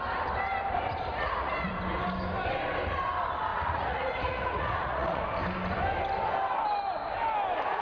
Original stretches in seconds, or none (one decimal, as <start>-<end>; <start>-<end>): 0.0-1.1; 1.7-3.5; 5.2-7.8